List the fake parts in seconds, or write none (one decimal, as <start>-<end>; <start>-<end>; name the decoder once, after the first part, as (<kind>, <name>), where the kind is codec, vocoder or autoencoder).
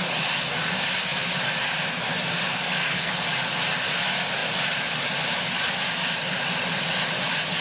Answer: 2.5-3.1 (codec, SNAC)